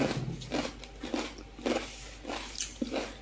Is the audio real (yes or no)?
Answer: yes